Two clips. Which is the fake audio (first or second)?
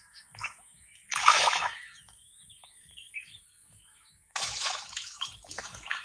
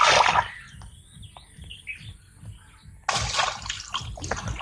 first